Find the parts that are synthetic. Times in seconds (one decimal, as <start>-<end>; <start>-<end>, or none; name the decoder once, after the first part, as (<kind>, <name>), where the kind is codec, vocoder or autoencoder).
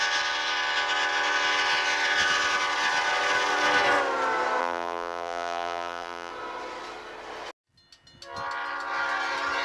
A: 4.6-6.3 (vocoder, BigVGAN v2)